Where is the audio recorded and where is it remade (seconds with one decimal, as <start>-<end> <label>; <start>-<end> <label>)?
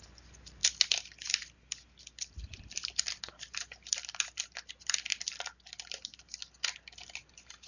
0.0-7.7 recorded